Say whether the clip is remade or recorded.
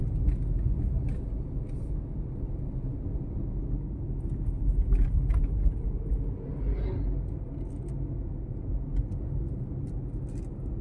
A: recorded